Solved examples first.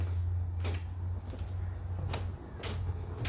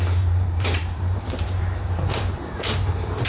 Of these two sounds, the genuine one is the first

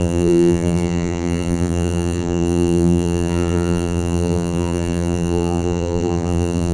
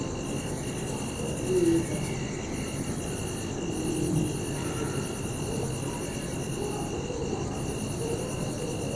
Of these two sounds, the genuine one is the second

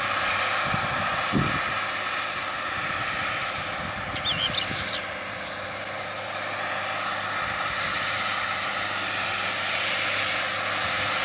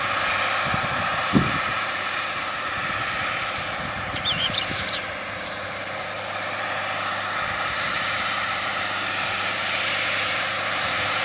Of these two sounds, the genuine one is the first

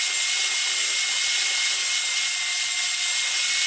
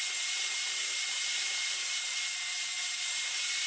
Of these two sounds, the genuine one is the first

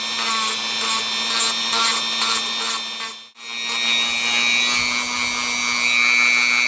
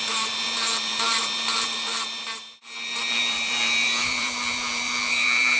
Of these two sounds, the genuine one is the first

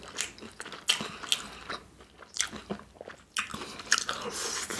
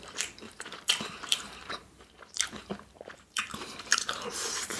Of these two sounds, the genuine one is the first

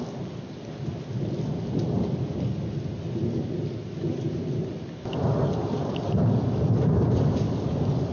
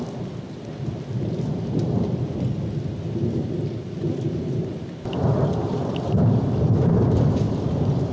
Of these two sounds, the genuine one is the first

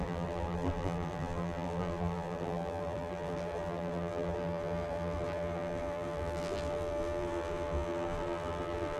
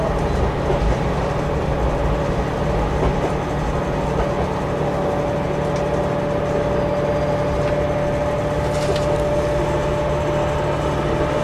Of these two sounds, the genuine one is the second